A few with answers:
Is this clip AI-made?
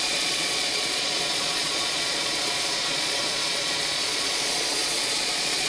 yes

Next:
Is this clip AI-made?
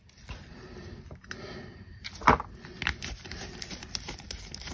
no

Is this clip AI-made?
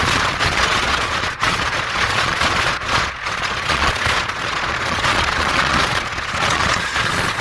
yes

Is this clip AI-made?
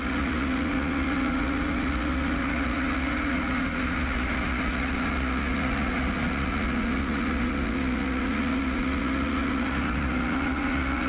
yes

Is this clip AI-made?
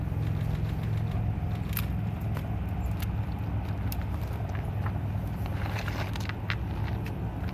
no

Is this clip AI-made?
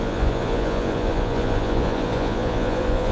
yes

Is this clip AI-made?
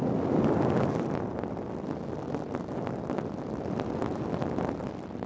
no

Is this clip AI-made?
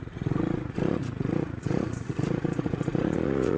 yes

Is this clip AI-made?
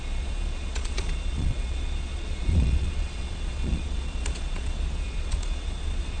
yes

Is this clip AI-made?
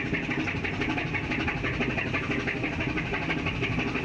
no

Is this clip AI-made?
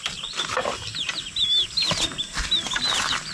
no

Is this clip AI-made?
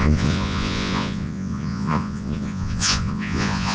yes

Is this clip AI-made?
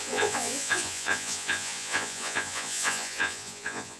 yes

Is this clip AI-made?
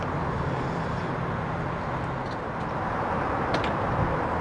no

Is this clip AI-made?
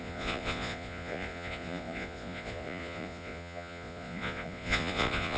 yes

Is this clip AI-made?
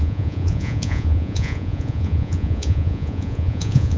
yes